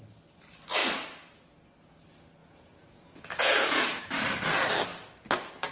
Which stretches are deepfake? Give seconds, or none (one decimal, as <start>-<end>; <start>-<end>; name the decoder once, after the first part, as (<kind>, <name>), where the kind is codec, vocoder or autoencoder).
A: 2.4-4.0 (vocoder, Vocos)